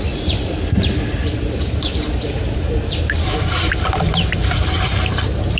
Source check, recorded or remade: remade